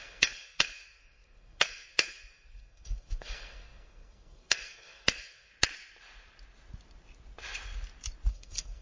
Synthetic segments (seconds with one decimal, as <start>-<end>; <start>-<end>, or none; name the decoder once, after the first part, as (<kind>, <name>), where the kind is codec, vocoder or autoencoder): 0.0-5.5 (codec, SNAC); 8.3-8.8